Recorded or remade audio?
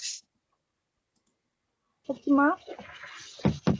recorded